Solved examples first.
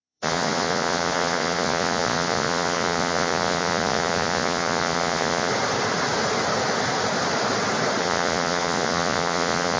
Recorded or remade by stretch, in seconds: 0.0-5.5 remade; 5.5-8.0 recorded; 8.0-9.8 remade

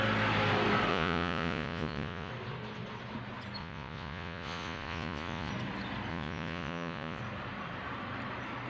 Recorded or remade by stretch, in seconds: 0.0-0.9 recorded; 0.9-2.3 remade; 2.3-3.6 recorded; 3.6-5.5 remade; 5.5-6.1 recorded; 6.1-7.2 remade; 7.2-8.7 recorded

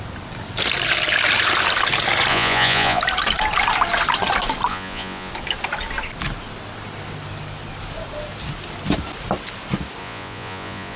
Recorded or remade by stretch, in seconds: 0.0-2.3 recorded; 2.3-3.0 remade; 3.0-4.7 recorded; 4.7-5.3 remade; 5.3-10.0 recorded; 10.0-11.0 remade